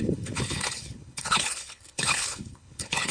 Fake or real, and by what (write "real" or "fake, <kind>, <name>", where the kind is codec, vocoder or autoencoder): fake, codec, HILCodec